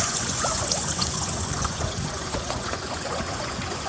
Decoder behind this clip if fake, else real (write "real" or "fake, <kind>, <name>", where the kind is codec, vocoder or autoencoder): fake, vocoder, Vocos